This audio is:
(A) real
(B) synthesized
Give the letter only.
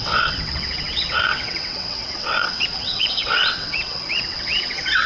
B